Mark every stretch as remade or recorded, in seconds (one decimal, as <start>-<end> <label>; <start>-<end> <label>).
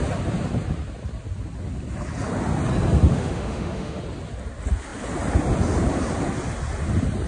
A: 0.0-3.1 recorded; 3.1-4.0 remade; 4.0-7.3 recorded